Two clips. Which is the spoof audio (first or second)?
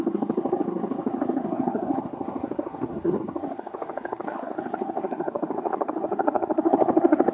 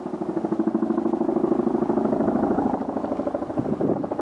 first